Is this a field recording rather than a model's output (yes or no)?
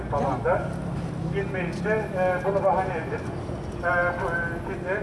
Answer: yes